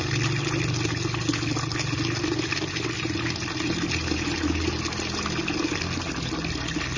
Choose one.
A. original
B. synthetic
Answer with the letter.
A